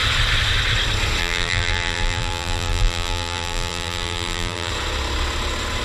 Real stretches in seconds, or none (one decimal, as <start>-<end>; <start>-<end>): 0.0-1.2; 4.7-5.8